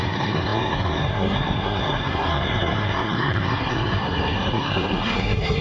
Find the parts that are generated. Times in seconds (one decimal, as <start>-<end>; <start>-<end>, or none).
0.0-5.6